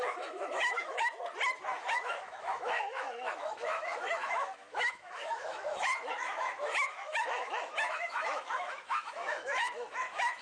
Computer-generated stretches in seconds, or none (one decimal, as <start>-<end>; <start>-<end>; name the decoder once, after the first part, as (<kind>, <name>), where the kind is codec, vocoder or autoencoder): 0.0-1.2 (autoencoder, DAC-VAE); 1.8-10.4